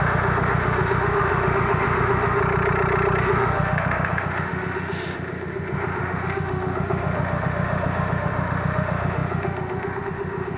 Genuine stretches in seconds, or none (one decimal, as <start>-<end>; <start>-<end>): 2.4-3.2